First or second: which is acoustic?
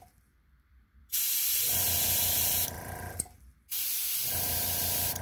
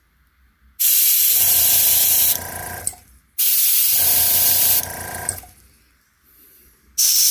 second